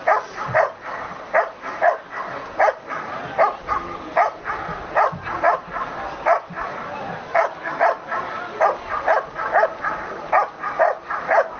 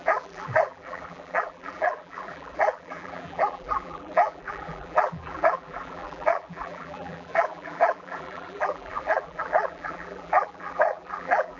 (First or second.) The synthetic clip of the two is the second